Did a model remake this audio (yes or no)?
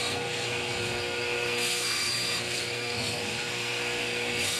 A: yes